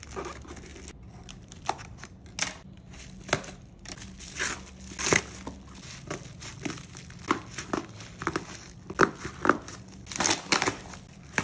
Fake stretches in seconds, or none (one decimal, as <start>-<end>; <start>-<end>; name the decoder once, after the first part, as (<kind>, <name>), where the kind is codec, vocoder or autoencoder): none